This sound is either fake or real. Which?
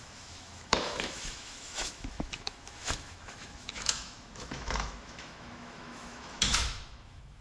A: fake